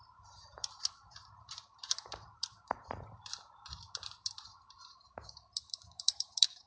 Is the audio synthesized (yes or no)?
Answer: yes